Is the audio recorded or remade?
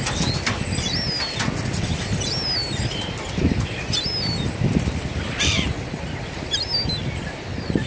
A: recorded